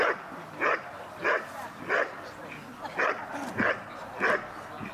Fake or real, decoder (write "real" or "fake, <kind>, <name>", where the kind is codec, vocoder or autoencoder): real